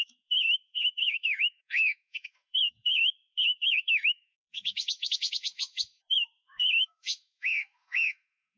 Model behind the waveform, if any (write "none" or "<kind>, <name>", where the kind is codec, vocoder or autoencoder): autoencoder, DAC-VAE